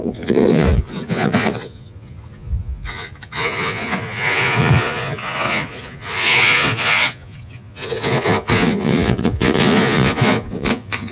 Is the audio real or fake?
fake